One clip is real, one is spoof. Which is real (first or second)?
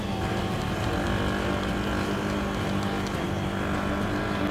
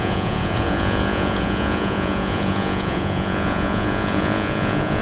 first